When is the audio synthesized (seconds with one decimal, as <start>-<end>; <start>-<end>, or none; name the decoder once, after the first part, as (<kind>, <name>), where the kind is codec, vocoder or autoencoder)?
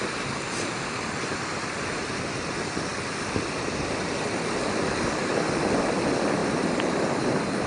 none